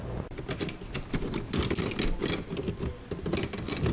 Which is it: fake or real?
real